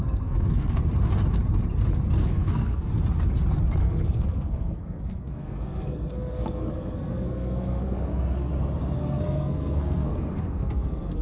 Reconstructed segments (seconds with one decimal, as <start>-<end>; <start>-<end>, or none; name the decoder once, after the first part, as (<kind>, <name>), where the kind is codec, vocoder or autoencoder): 0.0-0.8 (codec, SNAC); 2.2-2.9; 3.8-8.5; 9.0-11.2